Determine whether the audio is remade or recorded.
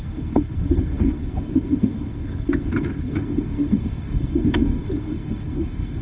remade